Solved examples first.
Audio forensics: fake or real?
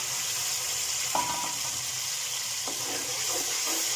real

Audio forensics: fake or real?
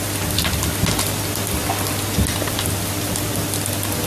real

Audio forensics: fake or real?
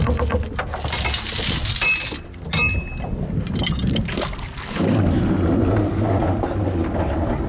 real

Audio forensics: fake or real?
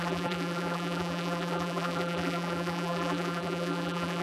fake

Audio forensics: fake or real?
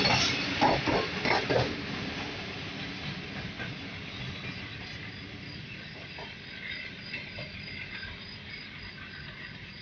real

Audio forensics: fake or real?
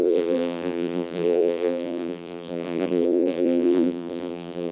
fake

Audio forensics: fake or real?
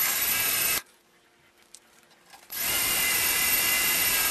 fake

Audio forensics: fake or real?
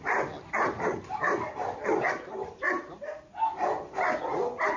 real